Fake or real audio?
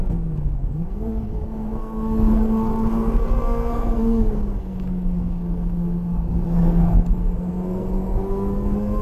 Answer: fake